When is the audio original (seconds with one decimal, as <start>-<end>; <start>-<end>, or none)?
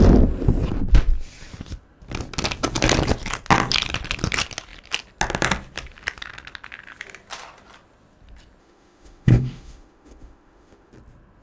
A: 0.0-8.6; 10.9-11.4